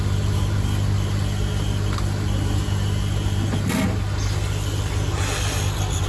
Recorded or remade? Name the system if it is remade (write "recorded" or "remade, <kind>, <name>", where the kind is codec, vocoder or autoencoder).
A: recorded